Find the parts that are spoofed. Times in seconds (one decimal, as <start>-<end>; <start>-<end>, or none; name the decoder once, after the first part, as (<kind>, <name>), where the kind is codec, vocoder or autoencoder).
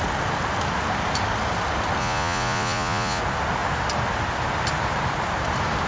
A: 2.0-3.2 (vocoder, Vocos)